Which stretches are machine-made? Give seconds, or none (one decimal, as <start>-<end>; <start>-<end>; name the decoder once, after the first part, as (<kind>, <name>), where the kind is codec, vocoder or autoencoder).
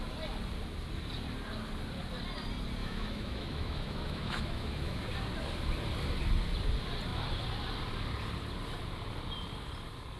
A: 2.8-5.1 (autoencoder, DAC-VAE)